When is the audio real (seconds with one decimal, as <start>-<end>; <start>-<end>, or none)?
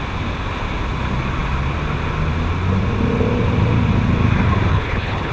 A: 0.0-4.7